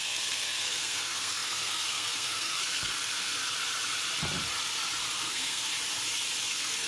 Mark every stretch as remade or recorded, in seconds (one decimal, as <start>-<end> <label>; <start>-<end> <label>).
0.0-3.4 remade; 3.4-5.1 recorded; 5.1-5.7 remade; 5.7-6.4 recorded; 6.4-6.9 remade